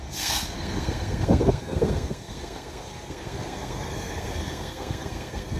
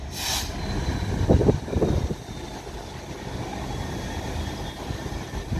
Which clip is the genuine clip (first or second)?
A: second